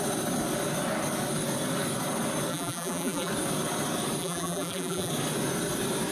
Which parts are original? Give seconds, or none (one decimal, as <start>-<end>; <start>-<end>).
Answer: 0.0-2.5; 3.3-4.2; 5.1-6.1